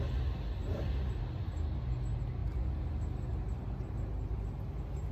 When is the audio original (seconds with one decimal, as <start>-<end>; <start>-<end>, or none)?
0.0-5.1